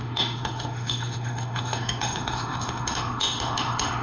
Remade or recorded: remade